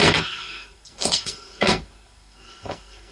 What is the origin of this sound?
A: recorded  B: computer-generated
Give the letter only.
B